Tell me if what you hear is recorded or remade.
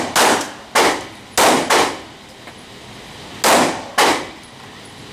recorded